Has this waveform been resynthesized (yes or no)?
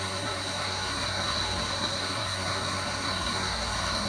yes